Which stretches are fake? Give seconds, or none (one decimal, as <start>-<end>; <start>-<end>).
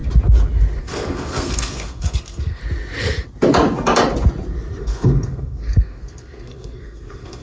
0.8-2.6; 4.8-7.4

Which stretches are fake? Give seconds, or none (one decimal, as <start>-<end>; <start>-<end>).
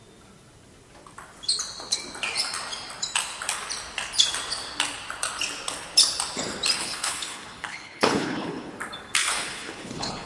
6.8-8.7; 9.2-10.3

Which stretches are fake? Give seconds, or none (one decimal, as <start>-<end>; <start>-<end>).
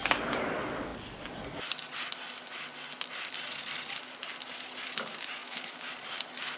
5.4-5.9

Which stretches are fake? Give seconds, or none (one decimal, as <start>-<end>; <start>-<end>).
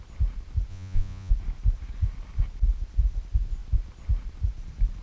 0.7-1.3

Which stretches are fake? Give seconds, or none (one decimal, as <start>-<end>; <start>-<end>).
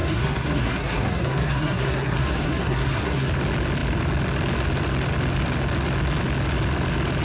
0.0-3.3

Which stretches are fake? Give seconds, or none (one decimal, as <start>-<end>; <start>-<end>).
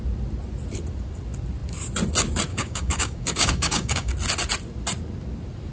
2.5-4.1